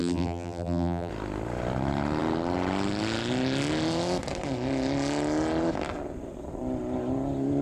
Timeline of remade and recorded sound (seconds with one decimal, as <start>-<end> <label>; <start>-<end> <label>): 0.0-1.1 remade; 1.1-7.6 recorded